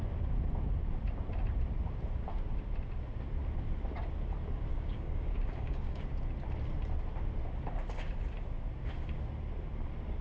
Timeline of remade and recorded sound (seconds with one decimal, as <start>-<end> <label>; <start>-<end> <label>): 0.0-4.7 recorded; 4.7-6.0 remade; 6.0-10.2 recorded